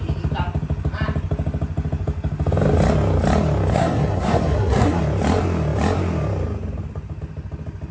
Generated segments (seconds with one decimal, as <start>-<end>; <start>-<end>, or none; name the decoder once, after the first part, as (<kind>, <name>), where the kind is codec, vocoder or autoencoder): 3.7-5.0 (codec, SNAC)